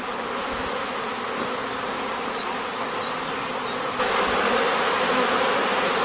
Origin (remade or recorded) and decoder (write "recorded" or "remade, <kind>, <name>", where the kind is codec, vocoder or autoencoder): recorded